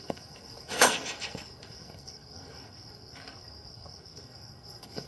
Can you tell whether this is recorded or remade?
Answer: remade